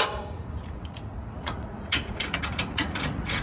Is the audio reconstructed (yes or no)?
yes